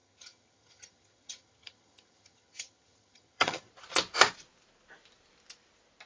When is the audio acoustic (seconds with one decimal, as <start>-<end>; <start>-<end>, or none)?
3.7-6.1